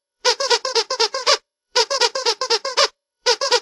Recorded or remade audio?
remade